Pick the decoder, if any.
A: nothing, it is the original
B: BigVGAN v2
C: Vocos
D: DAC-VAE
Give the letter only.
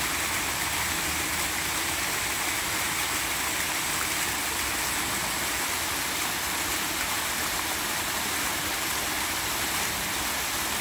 A